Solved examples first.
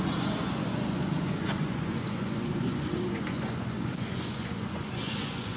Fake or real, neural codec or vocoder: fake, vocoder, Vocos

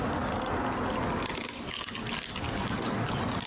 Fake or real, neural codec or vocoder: real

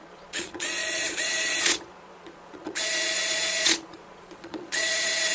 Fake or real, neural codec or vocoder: fake, vocoder, Vocos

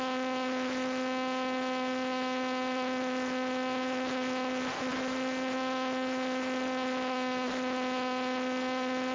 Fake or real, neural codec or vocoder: real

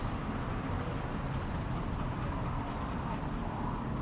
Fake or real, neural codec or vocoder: real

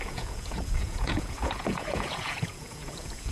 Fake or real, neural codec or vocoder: fake, vocoder, Vocos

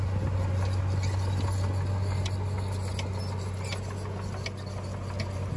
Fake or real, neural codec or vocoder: real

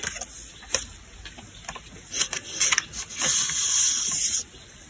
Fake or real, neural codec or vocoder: real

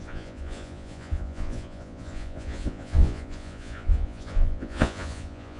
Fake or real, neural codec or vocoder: fake, vocoder, Vocos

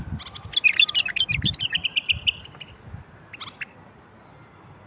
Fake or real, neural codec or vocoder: real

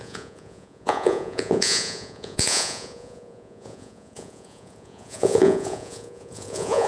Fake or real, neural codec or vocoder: fake, vocoder, Vocos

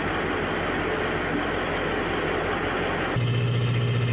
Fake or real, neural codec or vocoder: real